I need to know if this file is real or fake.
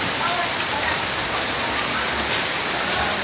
real